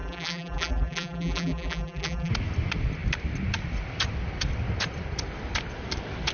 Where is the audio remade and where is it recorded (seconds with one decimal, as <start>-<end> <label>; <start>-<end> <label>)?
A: 0.0-2.3 remade; 2.3-6.3 recorded